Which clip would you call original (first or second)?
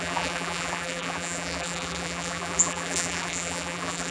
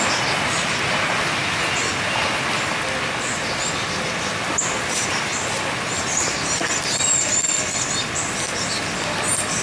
second